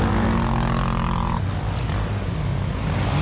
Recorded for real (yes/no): yes